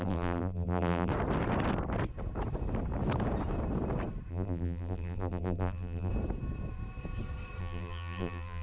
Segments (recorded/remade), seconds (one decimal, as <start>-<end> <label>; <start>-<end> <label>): 0.0-1.1 remade; 1.1-4.3 recorded; 4.3-6.1 remade; 6.1-7.6 recorded; 7.6-8.6 remade